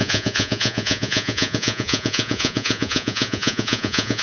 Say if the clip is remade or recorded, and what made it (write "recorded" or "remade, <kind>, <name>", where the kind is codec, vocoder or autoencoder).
remade, vocoder, Vocos